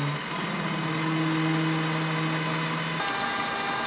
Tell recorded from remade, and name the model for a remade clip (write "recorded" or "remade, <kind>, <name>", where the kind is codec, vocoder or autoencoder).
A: recorded